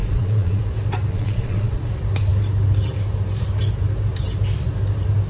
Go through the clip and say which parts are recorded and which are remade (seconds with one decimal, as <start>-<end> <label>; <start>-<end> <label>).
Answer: 0.0-0.6 remade; 0.6-1.1 recorded; 1.1-1.9 remade; 1.9-5.3 recorded

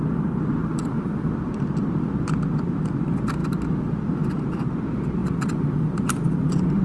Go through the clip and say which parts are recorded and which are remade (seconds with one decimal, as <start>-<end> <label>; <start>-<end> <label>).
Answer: 0.0-0.6 recorded; 0.6-1.3 remade; 1.3-5.2 recorded; 5.2-6.8 remade

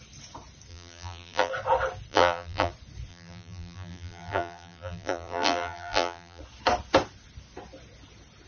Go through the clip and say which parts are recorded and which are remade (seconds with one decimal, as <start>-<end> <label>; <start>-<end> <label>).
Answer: 0.0-0.7 recorded; 0.7-1.5 remade; 1.5-2.1 recorded; 2.1-2.7 remade; 2.7-3.1 recorded; 3.1-6.4 remade; 6.4-8.5 recorded

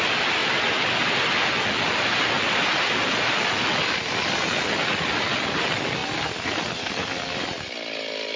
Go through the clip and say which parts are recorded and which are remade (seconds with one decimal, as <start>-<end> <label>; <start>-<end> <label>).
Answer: 0.0-8.4 recorded

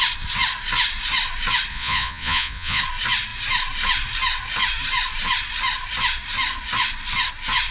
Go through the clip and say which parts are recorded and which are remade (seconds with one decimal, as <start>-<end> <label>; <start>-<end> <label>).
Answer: 0.0-1.7 recorded; 1.7-2.8 remade; 2.8-7.7 recorded

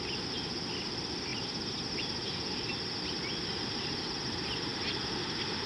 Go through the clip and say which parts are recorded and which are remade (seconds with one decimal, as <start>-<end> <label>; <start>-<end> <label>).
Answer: 0.0-5.7 recorded

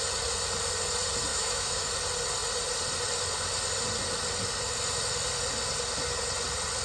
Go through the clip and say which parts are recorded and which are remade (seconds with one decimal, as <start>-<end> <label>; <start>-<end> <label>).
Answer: 0.0-1.3 recorded; 1.3-1.9 remade; 1.9-6.8 recorded